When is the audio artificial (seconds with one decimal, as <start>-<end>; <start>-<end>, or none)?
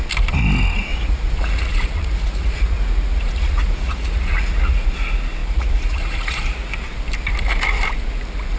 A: 0.9-4.9; 5.4-7.0